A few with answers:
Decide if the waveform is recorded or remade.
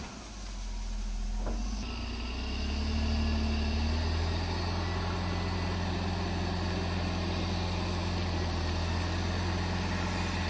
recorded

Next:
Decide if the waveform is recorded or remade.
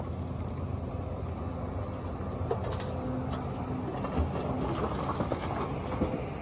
recorded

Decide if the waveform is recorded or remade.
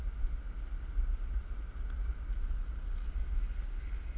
recorded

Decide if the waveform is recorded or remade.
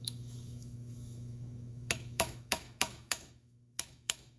remade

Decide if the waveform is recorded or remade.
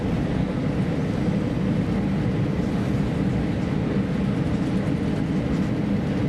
recorded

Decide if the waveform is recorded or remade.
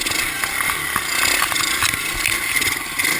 recorded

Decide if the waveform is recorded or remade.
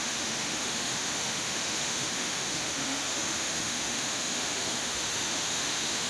remade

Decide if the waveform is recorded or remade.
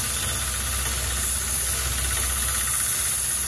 recorded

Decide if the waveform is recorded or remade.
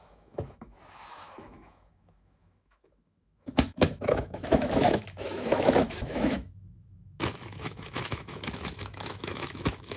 remade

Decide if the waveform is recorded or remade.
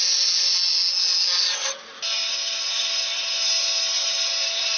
recorded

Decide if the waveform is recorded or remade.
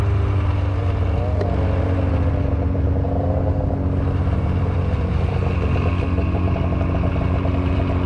recorded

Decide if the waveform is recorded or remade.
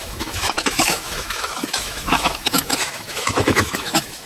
remade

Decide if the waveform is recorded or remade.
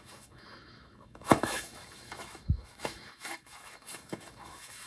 remade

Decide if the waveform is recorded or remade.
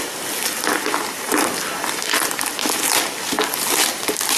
recorded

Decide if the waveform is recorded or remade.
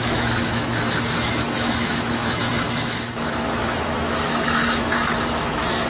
remade